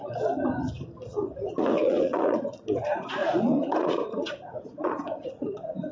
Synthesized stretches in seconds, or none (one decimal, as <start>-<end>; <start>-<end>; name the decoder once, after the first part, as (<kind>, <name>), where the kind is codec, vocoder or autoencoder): 1.1-2.6 (vocoder, Vocos); 3.2-5.9

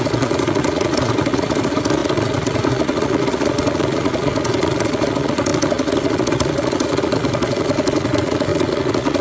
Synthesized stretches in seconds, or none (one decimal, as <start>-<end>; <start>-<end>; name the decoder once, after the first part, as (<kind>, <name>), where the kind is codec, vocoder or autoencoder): 0.0-9.2 (vocoder, Vocos)

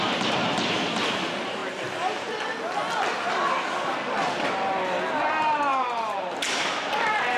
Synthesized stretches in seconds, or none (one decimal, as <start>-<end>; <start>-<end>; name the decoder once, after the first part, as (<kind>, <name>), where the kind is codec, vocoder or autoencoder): 5.7-6.4 (vocoder, BigVGAN v2)

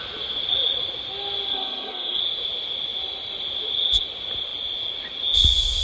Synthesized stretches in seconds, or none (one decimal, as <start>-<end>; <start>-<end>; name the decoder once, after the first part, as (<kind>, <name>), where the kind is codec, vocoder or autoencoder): 1.5-2.2 (codec, SNAC)

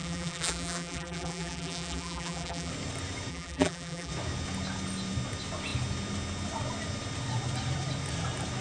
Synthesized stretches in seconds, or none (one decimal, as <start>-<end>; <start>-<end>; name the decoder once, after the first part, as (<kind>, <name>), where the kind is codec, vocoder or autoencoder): 0.0-2.7 (vocoder, BigVGAN v2); 3.3-4.1

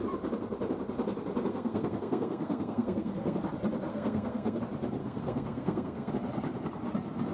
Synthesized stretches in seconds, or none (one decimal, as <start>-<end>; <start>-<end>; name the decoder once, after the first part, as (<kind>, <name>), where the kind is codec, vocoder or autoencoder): 1.5-3.4 (codec, SNAC); 3.9-4.6; 5.0-6.1